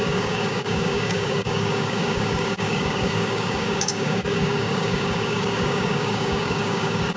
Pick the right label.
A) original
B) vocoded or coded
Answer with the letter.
B